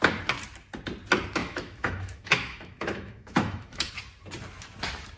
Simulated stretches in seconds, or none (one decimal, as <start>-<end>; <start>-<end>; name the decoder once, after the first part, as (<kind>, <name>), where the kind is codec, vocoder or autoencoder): 1.4-3.9 (autoencoder, DAC-VAE)